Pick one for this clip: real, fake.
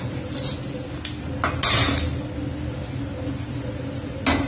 real